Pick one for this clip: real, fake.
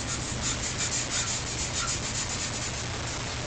real